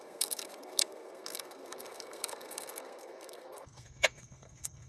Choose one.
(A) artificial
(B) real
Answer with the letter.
A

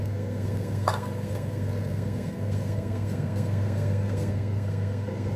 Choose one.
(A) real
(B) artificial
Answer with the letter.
B